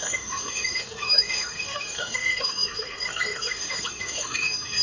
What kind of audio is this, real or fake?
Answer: fake